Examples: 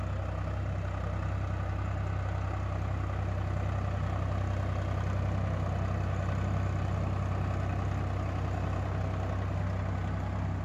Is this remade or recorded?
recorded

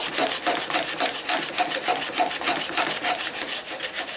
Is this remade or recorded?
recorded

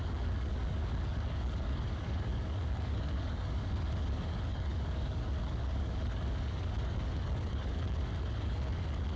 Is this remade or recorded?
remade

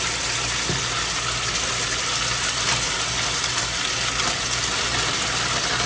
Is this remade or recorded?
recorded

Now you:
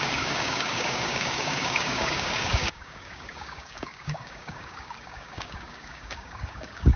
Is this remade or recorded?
remade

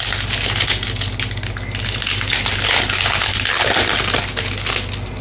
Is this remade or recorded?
recorded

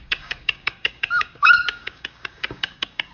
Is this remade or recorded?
remade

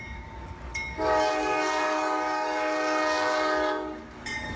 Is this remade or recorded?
remade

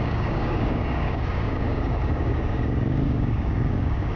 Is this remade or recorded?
remade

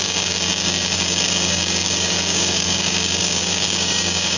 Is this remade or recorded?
remade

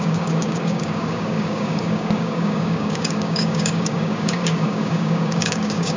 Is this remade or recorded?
remade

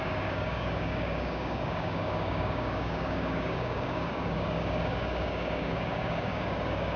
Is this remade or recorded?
remade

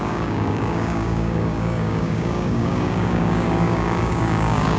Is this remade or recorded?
remade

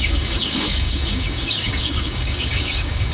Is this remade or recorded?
remade